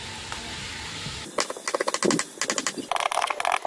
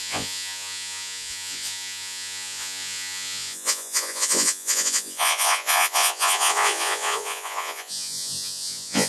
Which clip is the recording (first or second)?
first